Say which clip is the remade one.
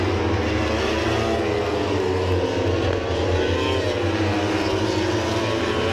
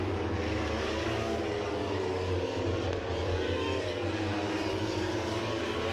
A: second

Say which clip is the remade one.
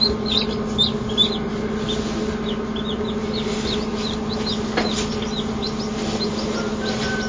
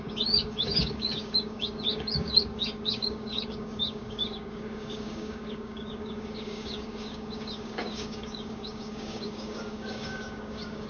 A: second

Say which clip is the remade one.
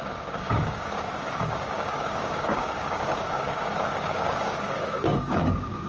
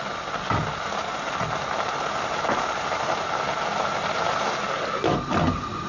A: first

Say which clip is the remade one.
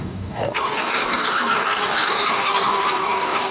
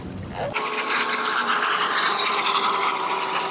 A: first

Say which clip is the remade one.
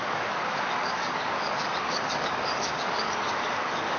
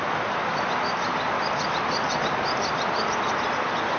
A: first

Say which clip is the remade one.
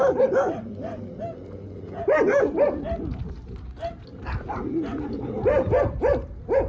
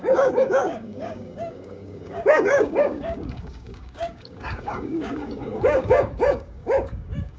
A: second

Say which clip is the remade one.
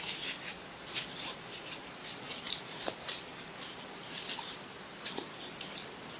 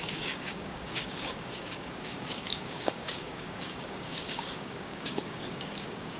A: second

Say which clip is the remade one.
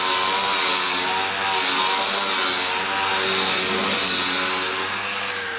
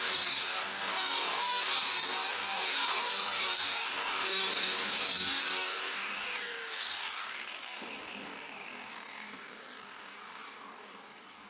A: second